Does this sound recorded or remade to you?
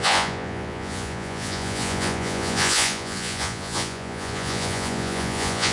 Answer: remade